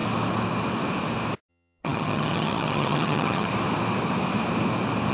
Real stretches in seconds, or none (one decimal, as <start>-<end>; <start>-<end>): 0.0-1.5; 3.5-5.1